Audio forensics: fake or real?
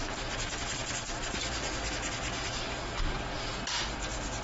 real